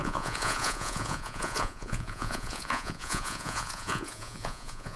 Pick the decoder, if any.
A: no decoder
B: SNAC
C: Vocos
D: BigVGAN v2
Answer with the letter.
C